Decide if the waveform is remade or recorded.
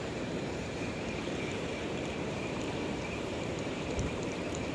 remade